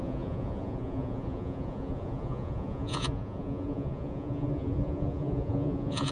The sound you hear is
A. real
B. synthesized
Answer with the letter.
B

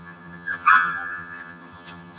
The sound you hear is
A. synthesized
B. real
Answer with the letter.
A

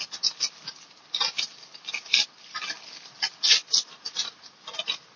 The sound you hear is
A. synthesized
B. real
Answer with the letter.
B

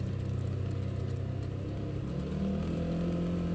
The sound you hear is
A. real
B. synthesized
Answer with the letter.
A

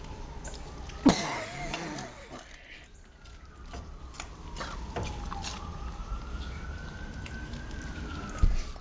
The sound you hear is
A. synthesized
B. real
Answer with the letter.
B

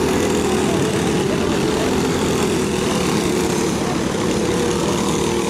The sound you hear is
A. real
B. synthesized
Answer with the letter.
A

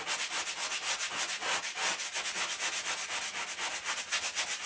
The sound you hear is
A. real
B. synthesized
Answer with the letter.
A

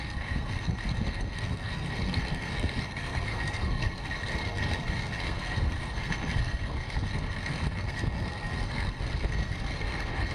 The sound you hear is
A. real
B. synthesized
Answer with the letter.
B